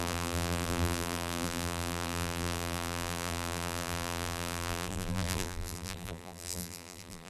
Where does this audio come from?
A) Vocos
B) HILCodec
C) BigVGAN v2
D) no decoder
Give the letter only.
C